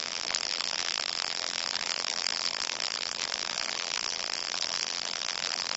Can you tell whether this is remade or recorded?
remade